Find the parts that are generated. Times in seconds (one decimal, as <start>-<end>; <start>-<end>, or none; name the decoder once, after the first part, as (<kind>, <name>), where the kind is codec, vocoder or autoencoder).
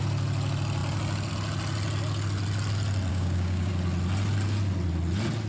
3.1-3.7 (codec, DAC)